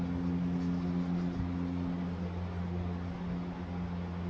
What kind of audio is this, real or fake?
real